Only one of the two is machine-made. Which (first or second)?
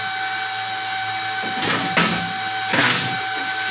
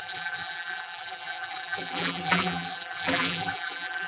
second